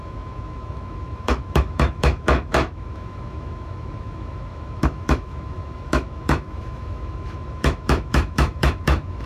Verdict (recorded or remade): remade